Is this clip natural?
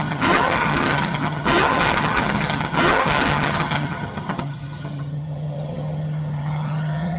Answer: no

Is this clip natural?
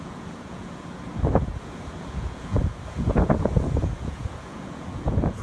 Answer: no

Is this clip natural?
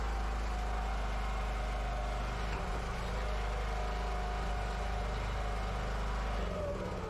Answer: yes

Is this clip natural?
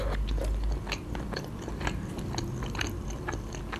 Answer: yes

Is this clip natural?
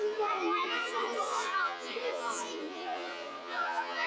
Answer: no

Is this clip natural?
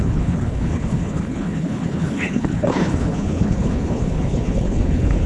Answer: no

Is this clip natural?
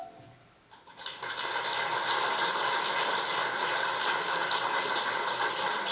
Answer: yes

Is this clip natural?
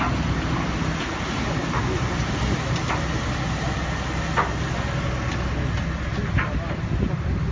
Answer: yes